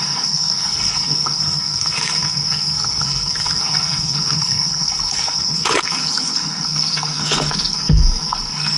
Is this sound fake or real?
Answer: fake